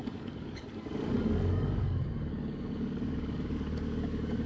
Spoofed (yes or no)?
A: yes